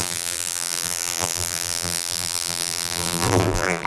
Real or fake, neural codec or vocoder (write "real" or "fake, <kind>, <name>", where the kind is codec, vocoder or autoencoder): fake, vocoder, BigVGAN v2